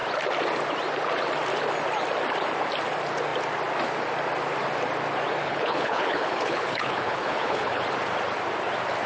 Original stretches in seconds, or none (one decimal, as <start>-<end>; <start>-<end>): 0.0-5.4; 7.8-9.1